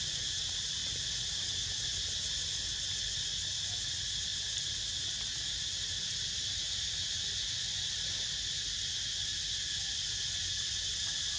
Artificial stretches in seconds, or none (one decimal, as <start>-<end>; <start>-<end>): none